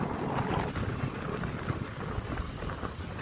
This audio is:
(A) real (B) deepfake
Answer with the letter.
A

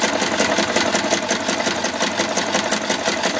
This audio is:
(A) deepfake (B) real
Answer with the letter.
B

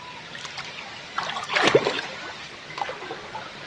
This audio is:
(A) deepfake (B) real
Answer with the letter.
B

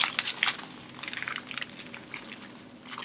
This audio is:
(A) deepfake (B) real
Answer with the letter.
B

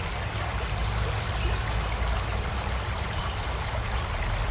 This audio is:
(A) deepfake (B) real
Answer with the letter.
B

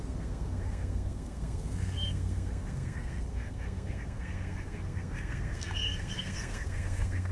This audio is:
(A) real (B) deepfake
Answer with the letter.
B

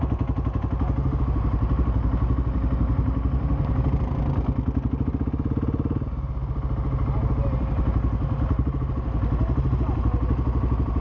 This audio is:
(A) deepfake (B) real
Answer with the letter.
B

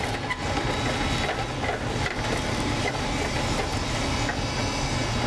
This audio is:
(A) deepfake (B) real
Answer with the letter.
B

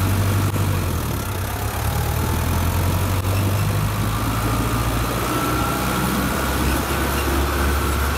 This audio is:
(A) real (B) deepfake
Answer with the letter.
A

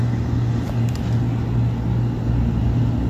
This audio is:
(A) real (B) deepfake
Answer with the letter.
A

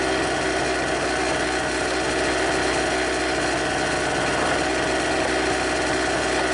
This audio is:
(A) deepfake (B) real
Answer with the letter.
B